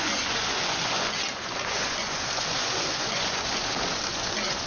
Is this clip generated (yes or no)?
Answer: yes